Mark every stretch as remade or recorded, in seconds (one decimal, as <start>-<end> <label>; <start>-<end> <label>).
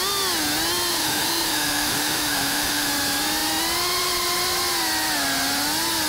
0.0-0.9 recorded; 0.9-2.9 remade; 2.9-6.1 recorded